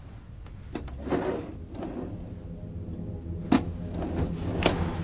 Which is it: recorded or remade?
recorded